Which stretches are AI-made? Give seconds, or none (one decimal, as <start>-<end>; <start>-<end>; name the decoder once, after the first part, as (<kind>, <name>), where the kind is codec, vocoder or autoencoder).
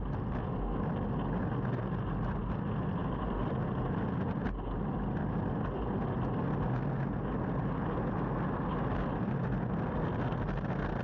none